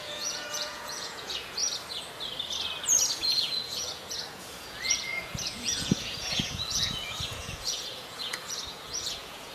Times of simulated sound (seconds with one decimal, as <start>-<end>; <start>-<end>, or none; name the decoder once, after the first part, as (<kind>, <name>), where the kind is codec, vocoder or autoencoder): 0.0-1.6 (vocoder, Vocos); 3.1-9.5